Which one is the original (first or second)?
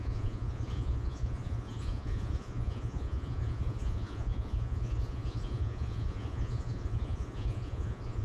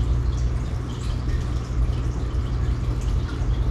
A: second